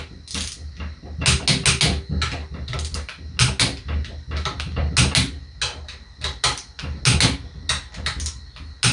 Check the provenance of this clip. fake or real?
real